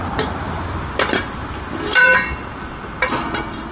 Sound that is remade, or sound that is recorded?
remade